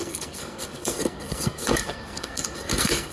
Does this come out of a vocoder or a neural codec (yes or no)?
yes